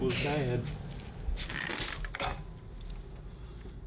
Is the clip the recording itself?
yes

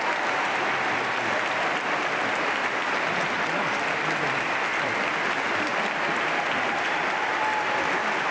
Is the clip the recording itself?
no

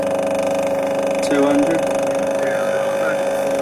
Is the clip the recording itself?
yes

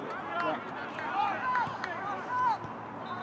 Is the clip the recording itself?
yes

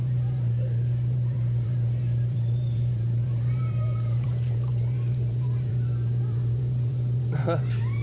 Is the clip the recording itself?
no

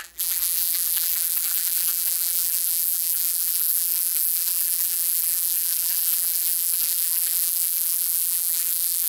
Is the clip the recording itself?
no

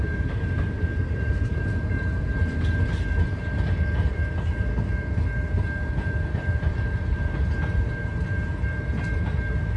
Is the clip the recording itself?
no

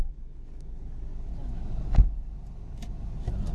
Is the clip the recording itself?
yes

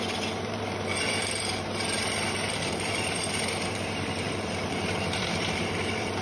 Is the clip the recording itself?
no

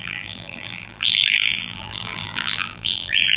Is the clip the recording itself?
no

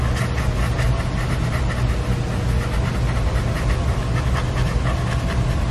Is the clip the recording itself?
yes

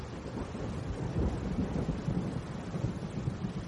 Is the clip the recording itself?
no